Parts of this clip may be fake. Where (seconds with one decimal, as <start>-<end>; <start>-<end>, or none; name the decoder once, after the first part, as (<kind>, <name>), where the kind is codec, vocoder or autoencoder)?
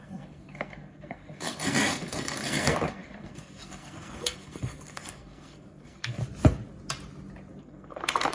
0.0-6.2 (codec, SNAC); 7.6-8.3